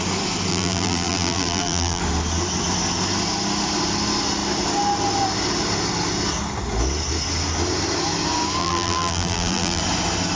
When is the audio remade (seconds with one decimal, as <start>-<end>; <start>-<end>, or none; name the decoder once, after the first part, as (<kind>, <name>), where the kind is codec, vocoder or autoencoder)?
0.5-2.0 (vocoder, BigVGAN v2); 8.6-9.8